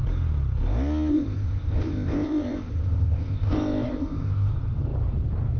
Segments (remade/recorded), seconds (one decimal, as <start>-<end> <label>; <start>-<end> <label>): 0.0-1.1 recorded; 1.1-4.5 remade; 4.5-5.6 recorded